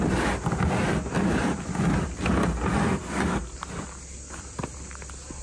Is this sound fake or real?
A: real